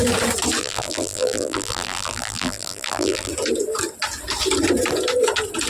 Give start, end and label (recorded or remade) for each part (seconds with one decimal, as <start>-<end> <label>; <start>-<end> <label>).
0.0-0.6 recorded; 0.6-3.3 remade; 3.3-5.7 recorded